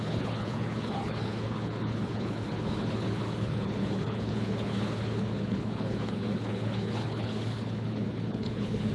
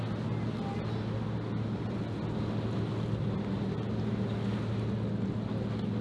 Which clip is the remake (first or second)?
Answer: first